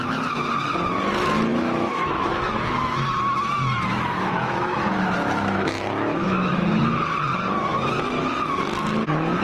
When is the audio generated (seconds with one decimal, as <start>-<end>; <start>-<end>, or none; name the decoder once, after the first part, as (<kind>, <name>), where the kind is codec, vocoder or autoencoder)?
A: 1.5-2.7 (autoencoder, DAC-VAE); 3.9-6.8